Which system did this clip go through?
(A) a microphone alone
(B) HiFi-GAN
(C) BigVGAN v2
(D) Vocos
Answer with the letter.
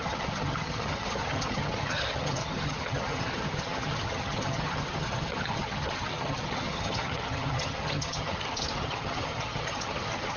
B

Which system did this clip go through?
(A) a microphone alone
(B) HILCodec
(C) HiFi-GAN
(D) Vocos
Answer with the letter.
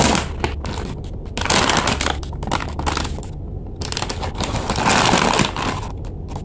A